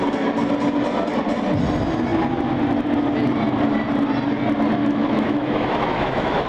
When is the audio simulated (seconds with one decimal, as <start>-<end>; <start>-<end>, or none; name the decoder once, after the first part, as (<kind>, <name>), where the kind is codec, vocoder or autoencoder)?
4.8-6.5 (autoencoder, DAC-VAE)